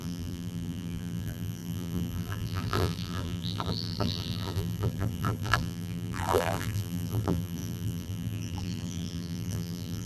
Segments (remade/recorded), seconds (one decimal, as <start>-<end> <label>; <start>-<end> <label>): 0.0-10.1 remade